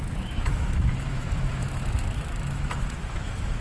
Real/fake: fake